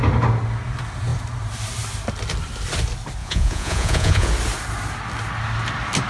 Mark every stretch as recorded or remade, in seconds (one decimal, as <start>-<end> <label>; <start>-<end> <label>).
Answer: 0.0-3.2 recorded; 3.2-4.3 remade; 4.3-6.1 recorded